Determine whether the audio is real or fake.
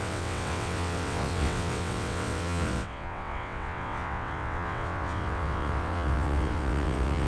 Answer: fake